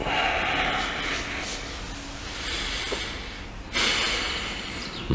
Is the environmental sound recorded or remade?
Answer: recorded